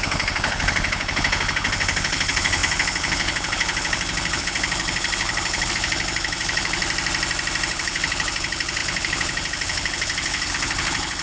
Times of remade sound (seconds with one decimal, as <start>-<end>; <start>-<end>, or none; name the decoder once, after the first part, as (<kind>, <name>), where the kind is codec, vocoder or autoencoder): 0.0-6.8 (codec, HILCodec); 7.7-11.2

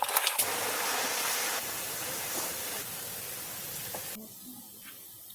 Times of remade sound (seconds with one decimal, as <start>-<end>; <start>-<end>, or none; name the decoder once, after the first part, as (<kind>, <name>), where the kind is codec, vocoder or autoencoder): 0.5-3.4 (vocoder, BigVGAN v2)

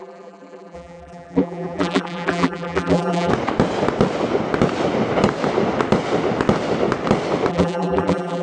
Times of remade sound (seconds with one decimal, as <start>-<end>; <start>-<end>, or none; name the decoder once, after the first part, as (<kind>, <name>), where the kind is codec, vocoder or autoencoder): 0.0-3.3 (vocoder, BigVGAN v2); 7.5-8.4

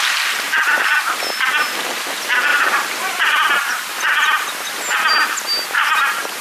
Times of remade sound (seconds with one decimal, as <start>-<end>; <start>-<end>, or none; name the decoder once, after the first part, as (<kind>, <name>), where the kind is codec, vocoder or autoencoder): 2.5-3.4 (vocoder, BigVGAN v2)

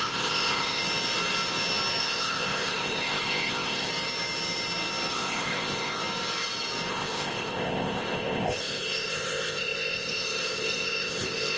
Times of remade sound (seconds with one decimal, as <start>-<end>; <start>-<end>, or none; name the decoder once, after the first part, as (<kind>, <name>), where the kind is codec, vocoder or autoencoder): 0.0-0.8 (codec, ZipCodec); 2.0-3.9; 5.1-6.0; 6.9-11.6

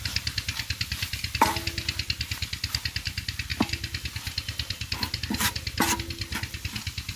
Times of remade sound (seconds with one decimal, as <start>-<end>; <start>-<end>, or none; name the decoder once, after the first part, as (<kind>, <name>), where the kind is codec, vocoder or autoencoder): none

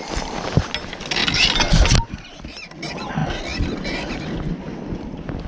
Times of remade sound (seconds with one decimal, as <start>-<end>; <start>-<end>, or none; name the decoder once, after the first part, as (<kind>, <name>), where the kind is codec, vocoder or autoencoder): none

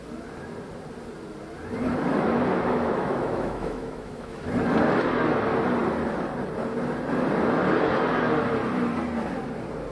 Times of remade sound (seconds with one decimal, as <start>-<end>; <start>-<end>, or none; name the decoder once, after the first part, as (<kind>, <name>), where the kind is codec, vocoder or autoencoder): 2.1-4.5 (autoencoder, DAC-VAE)